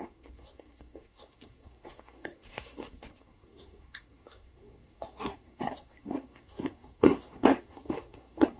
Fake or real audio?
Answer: fake